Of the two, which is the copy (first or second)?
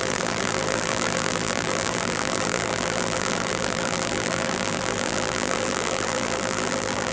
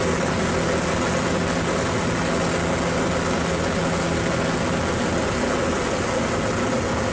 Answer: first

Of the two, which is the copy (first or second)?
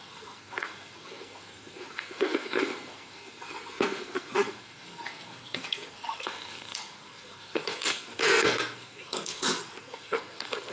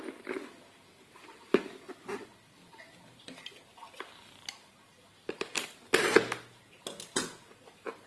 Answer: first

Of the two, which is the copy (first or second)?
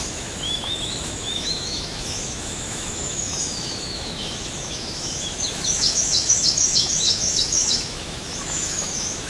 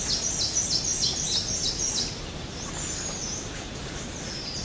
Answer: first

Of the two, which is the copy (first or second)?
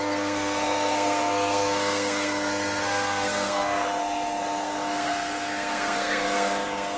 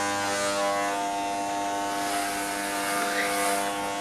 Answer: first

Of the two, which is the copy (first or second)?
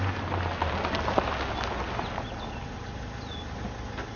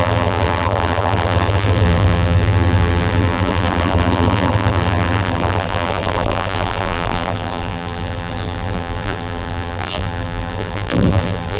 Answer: second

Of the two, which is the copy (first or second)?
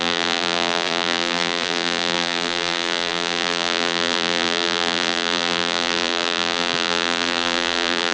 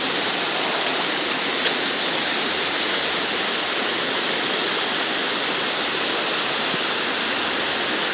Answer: first